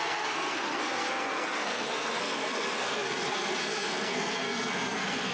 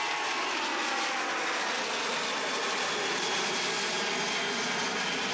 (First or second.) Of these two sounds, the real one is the second